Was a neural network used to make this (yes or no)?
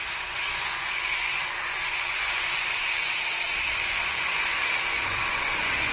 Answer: yes